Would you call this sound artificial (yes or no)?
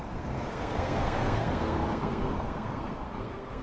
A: yes